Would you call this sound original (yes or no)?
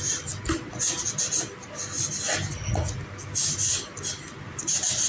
yes